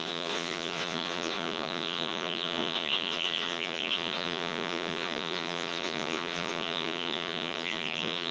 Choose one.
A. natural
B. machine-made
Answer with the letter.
B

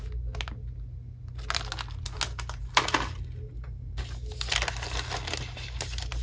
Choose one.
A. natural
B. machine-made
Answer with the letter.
A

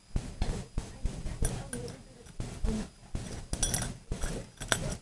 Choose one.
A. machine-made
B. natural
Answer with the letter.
B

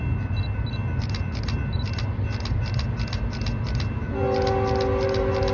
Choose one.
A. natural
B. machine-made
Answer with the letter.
A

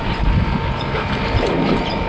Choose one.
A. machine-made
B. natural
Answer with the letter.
A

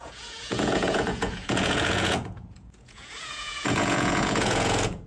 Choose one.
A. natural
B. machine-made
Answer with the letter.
B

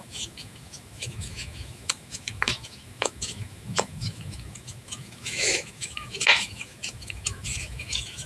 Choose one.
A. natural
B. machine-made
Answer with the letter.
B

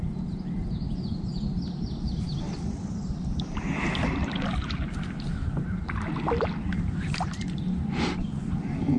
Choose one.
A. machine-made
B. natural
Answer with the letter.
B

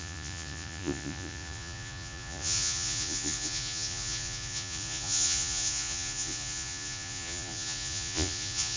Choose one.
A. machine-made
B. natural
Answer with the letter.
A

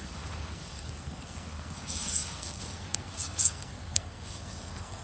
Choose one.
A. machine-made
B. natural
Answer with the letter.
A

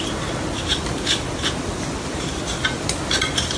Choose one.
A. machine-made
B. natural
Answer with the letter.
B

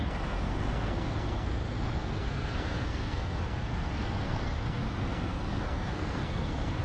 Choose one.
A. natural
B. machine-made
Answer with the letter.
B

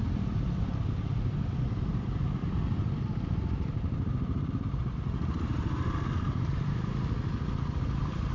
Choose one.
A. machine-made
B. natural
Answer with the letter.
A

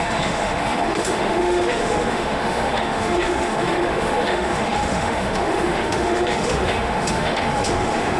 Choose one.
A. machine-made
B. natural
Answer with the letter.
A